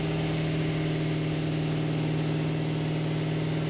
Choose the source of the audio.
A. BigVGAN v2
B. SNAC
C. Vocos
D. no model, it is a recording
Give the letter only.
D